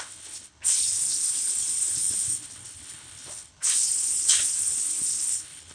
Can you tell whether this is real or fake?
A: fake